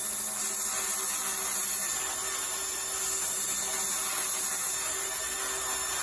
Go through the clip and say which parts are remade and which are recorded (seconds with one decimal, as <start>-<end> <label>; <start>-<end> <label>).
0.0-6.0 recorded